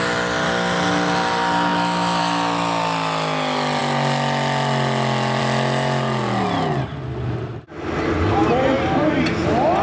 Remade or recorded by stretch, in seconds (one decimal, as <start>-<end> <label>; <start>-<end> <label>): 0.0-9.8 recorded